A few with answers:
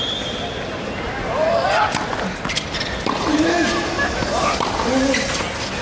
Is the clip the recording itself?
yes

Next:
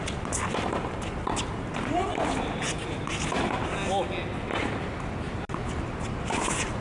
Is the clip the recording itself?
yes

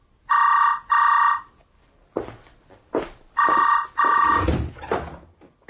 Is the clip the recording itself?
yes